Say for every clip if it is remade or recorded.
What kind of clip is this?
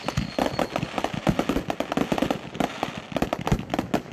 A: recorded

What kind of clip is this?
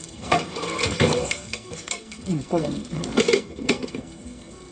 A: remade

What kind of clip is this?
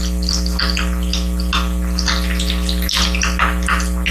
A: recorded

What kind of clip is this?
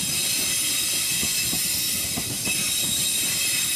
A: recorded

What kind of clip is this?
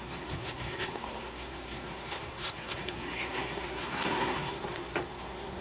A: remade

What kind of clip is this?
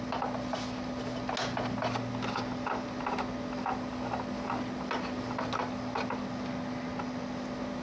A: recorded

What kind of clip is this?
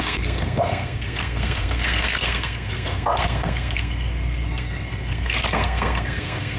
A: remade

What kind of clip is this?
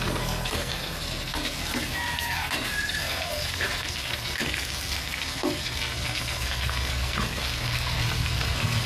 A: remade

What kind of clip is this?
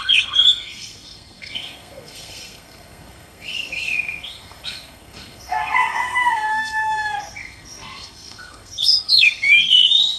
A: remade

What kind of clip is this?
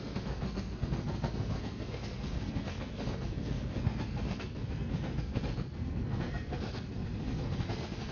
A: remade